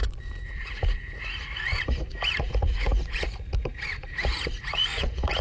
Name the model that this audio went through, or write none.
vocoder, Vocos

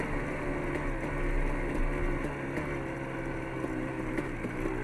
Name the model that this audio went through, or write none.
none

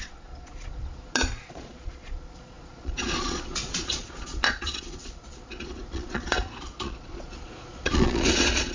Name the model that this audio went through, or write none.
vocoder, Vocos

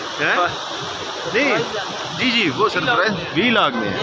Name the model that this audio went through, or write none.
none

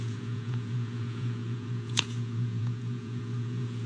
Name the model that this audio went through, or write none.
vocoder, Vocos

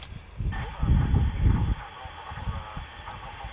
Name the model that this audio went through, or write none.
none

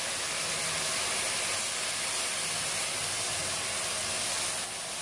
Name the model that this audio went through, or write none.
none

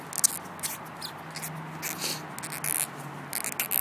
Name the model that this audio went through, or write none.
none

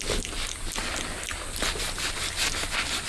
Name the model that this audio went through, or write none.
none